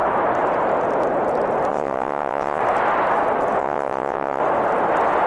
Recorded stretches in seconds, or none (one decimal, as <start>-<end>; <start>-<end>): 0.0-1.7; 2.6-3.6; 4.4-5.3